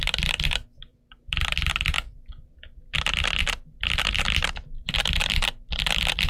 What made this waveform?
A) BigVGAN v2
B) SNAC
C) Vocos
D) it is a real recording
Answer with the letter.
D